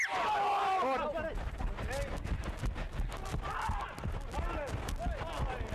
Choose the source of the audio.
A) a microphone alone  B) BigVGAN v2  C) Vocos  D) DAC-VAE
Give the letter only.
A